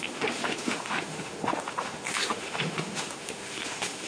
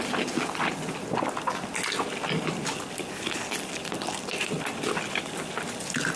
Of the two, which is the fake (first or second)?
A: first